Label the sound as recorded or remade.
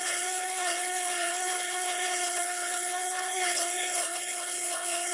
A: remade